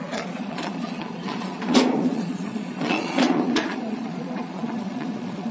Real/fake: fake